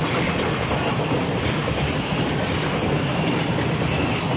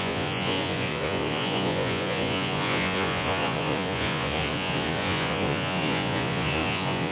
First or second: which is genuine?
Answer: first